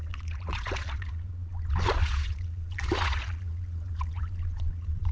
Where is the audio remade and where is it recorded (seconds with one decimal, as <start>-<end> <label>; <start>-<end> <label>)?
0.0-5.1 remade